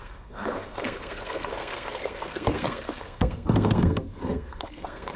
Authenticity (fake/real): fake